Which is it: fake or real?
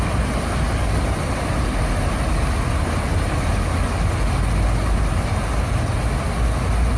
real